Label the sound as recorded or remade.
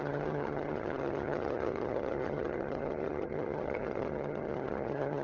remade